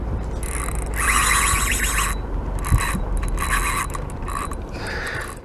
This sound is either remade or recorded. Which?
recorded